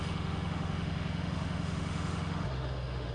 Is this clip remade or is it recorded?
remade